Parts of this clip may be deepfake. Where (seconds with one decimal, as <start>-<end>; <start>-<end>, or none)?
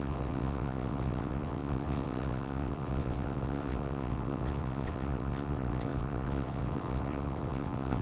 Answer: 0.0-8.0